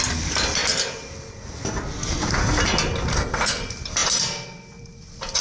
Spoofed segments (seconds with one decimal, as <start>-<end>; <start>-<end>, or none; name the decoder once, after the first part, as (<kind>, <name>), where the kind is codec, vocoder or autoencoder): 3.1-3.6 (codec, SNAC)